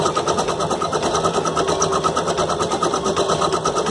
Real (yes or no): yes